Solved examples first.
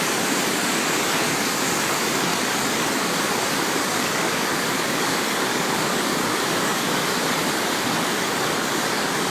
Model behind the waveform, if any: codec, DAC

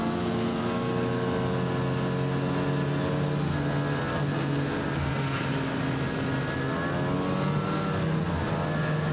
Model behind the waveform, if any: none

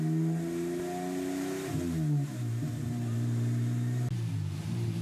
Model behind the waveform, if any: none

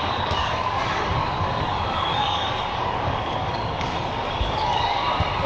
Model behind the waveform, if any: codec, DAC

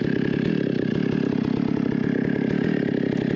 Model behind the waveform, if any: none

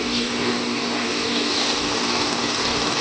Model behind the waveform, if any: codec, DAC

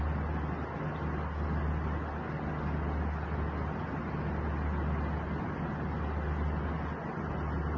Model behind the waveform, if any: none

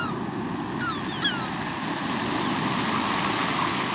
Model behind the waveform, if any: none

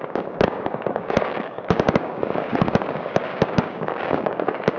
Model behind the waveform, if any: codec, DAC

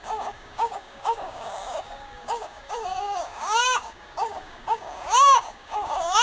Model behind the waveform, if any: codec, DAC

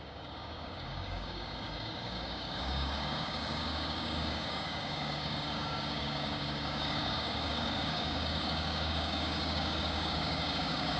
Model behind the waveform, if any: codec, DAC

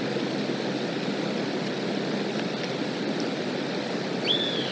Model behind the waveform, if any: none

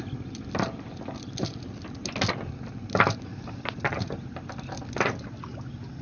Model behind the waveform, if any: none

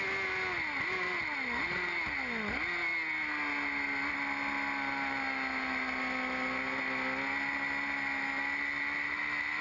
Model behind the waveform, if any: none